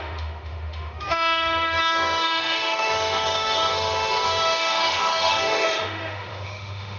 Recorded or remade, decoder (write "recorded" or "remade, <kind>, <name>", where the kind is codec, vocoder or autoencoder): remade, autoencoder, DAC-VAE